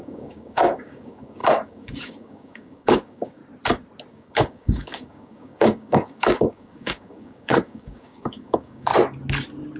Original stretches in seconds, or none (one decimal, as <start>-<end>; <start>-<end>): 3.4-4.1; 8.9-9.8

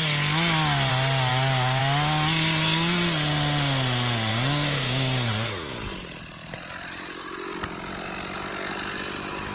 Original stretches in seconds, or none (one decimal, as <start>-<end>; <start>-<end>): 0.0-1.3; 1.8-4.3; 5.3-9.5